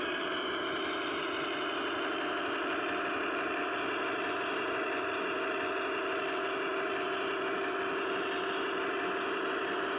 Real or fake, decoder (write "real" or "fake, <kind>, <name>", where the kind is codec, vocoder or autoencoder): real